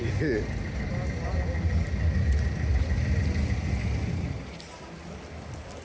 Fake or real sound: real